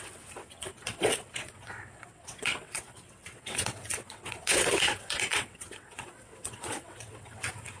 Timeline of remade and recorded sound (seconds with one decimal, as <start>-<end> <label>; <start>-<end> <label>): 0.0-7.8 remade